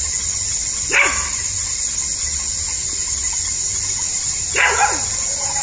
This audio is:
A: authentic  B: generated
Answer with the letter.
A